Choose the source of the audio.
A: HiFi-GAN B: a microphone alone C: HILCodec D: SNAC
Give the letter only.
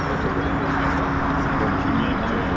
B